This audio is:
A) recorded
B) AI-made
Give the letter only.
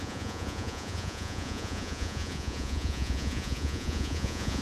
B